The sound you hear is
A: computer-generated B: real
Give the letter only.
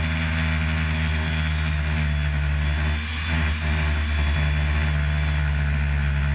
B